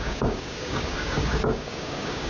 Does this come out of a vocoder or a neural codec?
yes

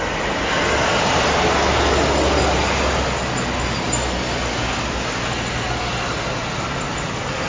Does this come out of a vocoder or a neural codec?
no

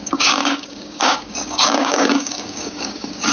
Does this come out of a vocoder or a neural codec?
yes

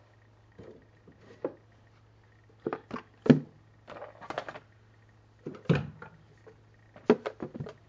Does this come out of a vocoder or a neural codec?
no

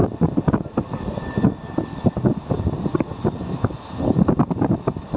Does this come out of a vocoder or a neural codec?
no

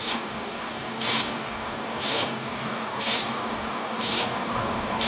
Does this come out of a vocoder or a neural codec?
yes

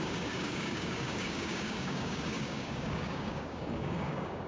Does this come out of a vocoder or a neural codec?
yes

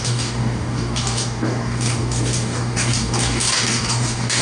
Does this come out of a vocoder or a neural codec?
yes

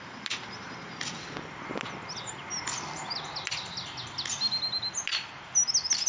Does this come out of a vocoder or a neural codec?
no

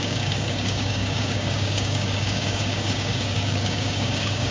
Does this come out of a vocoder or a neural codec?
yes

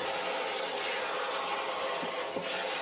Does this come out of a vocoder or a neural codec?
no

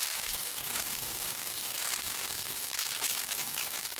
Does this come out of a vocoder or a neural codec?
yes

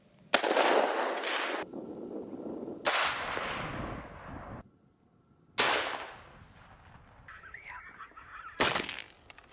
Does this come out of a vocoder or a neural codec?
no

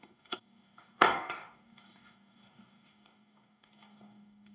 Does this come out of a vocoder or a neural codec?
yes